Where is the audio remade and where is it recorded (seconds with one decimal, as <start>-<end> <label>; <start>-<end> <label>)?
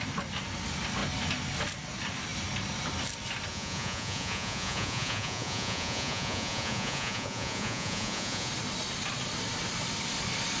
0.0-3.5 recorded; 3.5-8.5 remade; 8.5-10.6 recorded